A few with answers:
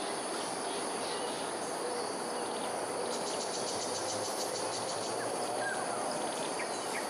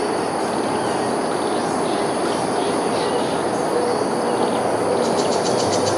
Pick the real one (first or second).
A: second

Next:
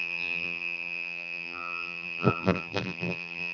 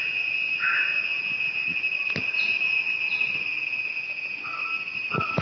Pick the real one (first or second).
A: second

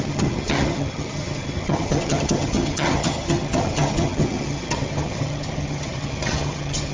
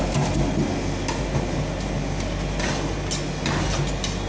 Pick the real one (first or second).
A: second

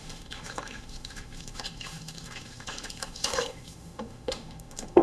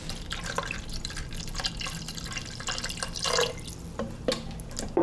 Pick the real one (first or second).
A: second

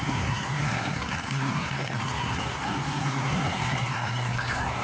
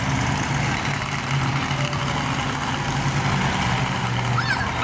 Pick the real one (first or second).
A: second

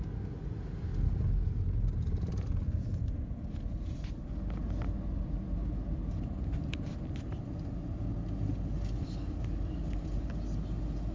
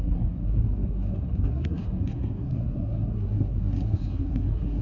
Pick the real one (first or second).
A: first